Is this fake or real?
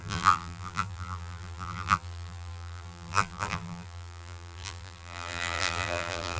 fake